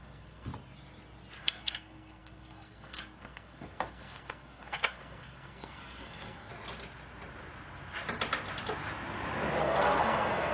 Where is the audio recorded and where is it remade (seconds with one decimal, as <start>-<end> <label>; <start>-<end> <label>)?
0.0-0.5 remade; 0.5-1.4 recorded; 1.4-6.5 remade; 6.5-9.6 recorded; 9.6-10.5 remade